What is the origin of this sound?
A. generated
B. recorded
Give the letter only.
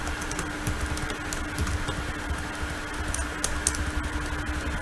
B